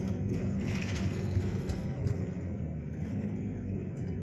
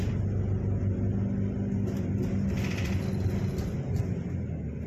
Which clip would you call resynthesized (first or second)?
first